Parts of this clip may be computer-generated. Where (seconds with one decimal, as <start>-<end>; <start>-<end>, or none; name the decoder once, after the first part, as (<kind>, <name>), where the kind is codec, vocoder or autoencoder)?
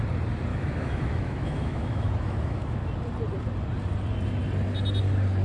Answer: 0.5-2.8 (autoencoder, DAC-VAE)